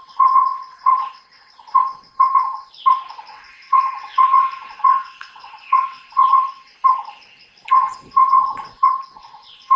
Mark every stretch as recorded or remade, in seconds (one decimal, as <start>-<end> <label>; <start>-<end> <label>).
0.0-2.7 remade; 2.7-3.3 recorded; 3.3-6.7 remade; 6.7-7.7 recorded; 7.7-9.8 remade